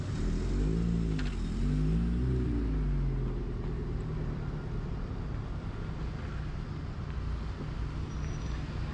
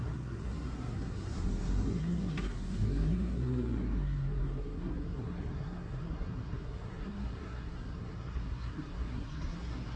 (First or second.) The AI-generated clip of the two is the second